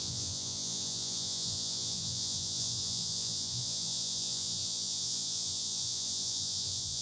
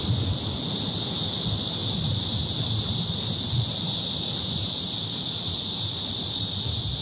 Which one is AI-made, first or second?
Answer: first